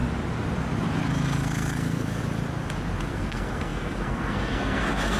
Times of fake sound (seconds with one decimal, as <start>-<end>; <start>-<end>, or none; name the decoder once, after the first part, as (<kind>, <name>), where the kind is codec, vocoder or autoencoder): 1.1-2.2 (codec, SNAC); 3.0-5.2